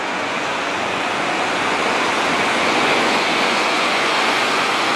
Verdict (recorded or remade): remade